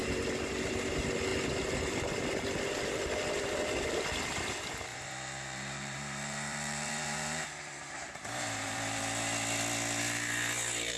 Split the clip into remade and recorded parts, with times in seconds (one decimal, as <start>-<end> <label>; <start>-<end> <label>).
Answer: 0.0-4.9 recorded; 4.9-9.0 remade; 9.0-11.0 recorded